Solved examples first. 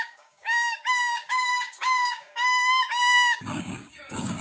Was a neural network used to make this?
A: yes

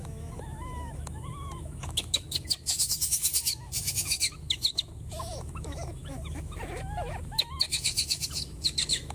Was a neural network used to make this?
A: yes